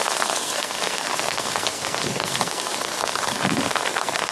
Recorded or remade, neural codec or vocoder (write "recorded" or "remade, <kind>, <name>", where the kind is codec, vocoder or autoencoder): remade, codec, SNAC